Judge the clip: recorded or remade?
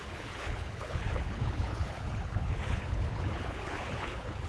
remade